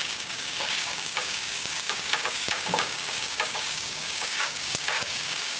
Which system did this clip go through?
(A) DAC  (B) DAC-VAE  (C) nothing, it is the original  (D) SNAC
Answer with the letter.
A